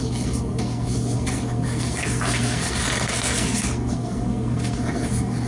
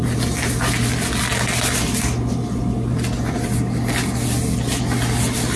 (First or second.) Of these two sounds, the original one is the second